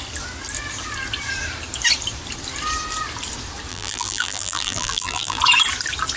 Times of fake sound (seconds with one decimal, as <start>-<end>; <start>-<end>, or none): 3.7-5.4